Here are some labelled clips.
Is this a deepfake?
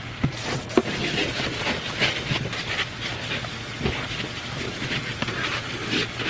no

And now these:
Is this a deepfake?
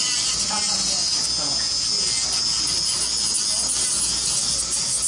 no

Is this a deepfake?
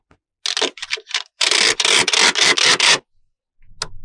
no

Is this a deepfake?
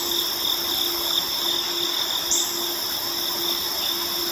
no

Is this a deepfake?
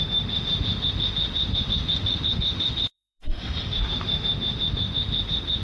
yes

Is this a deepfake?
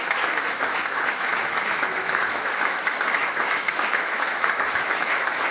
yes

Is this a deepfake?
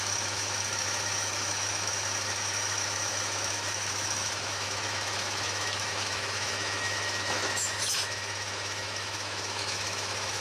yes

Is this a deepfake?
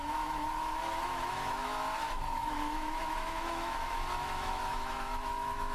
yes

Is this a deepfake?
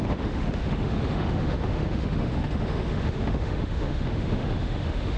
yes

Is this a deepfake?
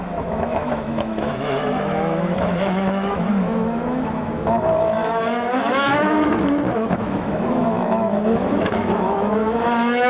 yes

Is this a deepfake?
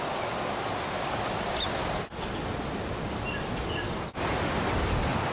no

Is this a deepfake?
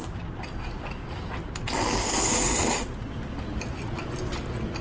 no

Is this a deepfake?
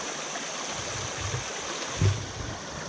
no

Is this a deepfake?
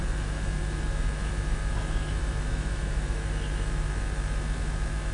yes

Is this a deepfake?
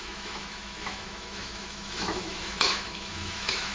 yes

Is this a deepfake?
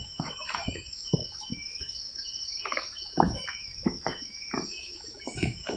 yes